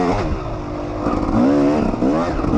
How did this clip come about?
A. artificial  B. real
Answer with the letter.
B